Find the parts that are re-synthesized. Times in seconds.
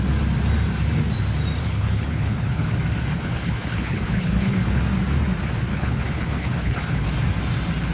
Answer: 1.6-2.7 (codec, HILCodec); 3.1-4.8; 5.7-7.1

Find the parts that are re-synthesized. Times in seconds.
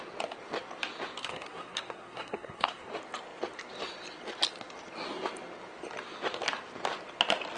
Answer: 1.2-2.9 (codec, SNAC)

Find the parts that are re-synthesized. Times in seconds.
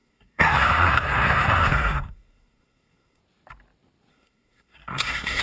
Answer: 0.0-3.2 (codec, SNAC); 4.1-5.4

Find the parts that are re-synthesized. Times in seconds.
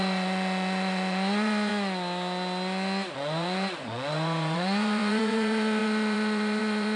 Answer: 0.0-1.7 (vocoder, Vocos); 3.1-7.0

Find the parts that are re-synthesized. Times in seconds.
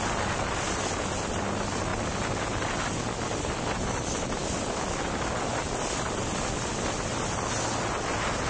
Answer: none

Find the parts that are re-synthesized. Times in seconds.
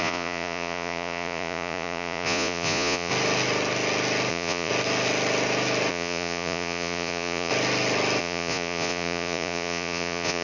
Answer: 0.0-3.1 (vocoder, Vocos); 4.3-4.7; 5.9-7.5; 8.2-10.4